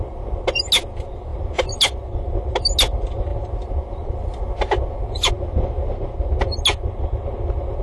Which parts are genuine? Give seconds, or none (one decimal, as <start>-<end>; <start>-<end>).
0.0-1.3; 2.0-7.8